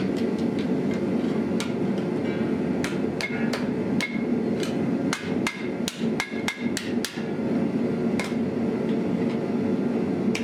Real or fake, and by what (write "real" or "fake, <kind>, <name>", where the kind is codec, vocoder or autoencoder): real